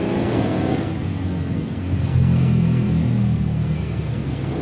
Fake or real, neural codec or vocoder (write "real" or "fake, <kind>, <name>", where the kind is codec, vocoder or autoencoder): fake, codec, SNAC